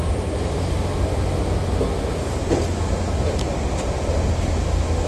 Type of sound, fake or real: real